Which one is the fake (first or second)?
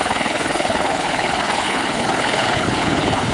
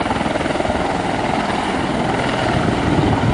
first